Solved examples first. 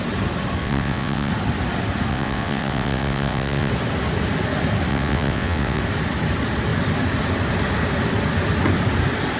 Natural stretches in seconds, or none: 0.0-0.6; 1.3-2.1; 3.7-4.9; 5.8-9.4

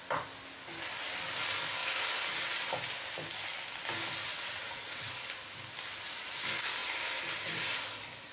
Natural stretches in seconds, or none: 0.0-4.2; 5.1-8.3

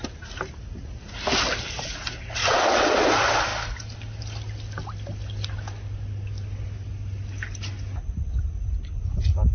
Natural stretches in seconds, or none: 0.0-2.4; 3.1-9.5